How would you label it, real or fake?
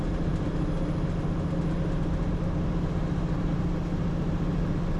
real